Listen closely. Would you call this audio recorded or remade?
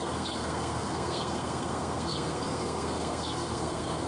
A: remade